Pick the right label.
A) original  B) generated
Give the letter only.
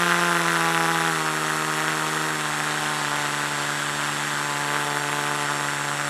A